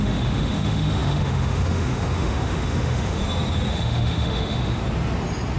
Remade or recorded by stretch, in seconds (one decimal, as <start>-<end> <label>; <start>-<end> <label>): 0.0-3.2 remade; 3.2-3.7 recorded; 3.7-4.8 remade; 4.8-5.6 recorded